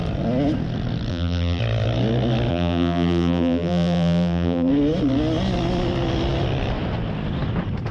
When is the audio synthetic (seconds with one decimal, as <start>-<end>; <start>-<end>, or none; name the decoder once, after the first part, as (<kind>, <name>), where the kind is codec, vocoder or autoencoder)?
1.1-1.6 (vocoder, BigVGAN v2); 2.5-4.7